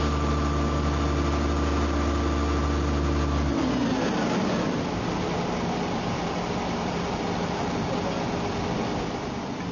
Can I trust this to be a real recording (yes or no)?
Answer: yes